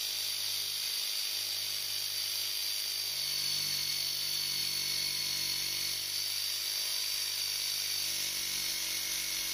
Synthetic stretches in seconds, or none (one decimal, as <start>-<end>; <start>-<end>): none

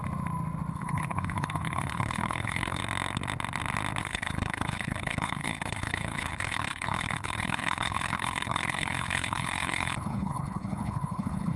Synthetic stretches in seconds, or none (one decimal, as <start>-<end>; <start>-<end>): 0.7-2.8; 4.0-11.6

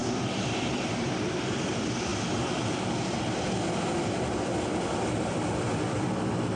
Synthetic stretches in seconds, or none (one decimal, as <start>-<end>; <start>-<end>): 0.0-6.6

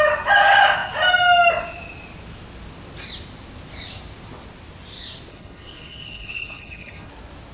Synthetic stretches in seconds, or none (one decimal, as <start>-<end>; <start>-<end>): 5.3-7.1

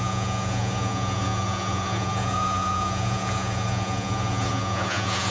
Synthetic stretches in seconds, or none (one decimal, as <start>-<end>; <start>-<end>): 0.0-5.3

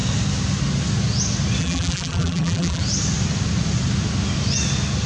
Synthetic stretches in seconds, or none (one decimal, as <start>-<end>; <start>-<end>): 1.6-2.8

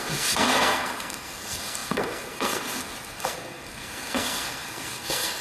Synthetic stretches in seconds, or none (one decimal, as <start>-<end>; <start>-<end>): 0.0-5.4

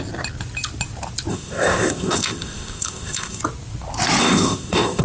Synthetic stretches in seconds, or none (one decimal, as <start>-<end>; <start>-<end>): 1.3-3.4; 4.2-5.0